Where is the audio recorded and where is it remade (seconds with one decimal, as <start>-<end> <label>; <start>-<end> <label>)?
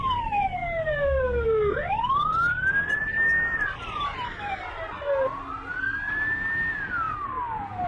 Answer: 0.0-7.9 recorded